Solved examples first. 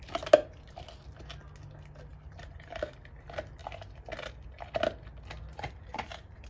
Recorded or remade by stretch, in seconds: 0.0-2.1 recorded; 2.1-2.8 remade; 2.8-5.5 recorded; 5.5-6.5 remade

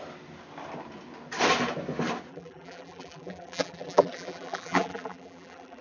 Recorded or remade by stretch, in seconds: 0.0-2.3 recorded; 2.3-5.8 remade